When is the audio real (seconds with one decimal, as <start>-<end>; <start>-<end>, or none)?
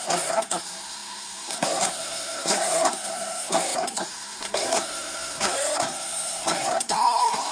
none